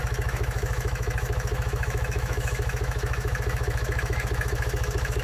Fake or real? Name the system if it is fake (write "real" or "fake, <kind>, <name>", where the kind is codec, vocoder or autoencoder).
fake, autoencoder, DAC-VAE